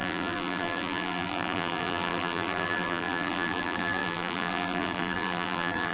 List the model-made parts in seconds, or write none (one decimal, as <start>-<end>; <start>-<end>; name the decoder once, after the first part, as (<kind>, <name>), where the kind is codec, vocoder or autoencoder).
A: 0.0-5.9 (vocoder, BigVGAN v2)